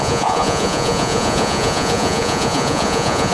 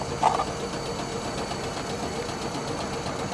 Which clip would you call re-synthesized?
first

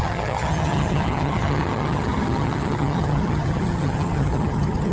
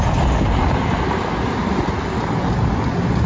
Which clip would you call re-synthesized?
first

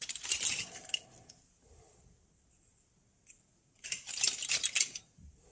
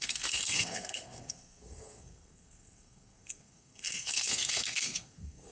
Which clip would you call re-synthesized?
second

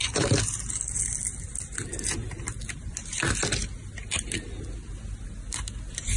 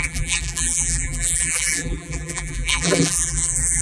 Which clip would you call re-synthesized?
second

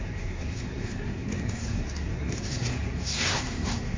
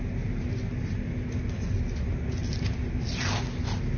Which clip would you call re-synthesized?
first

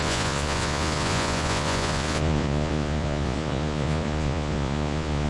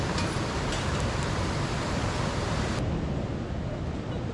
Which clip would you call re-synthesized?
first